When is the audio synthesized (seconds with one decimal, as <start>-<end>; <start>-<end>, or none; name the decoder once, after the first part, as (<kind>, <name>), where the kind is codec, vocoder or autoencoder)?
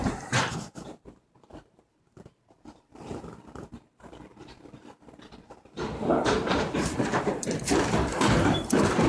0.7-9.1 (vocoder, BigVGAN v2)